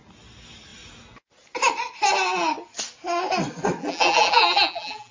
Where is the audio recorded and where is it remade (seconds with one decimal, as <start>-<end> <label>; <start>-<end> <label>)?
0.0-3.8 recorded; 3.8-5.1 remade